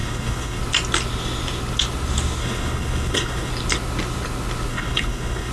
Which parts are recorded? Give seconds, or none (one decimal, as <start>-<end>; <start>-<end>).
0.6-2.4; 3.5-4.7